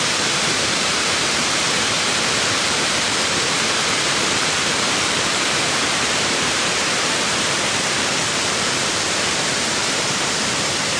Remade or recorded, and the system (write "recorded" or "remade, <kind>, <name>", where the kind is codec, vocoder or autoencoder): remade, vocoder, BigVGAN v2